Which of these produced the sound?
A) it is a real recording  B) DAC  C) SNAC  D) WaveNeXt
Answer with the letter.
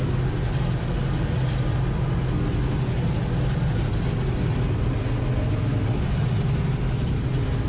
A